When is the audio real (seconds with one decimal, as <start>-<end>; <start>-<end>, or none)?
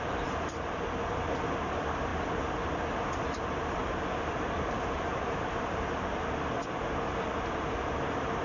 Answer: 0.0-3.8; 6.4-8.4